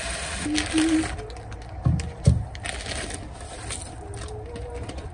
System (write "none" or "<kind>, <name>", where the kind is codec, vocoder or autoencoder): none